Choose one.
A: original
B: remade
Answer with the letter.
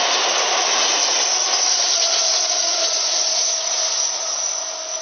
A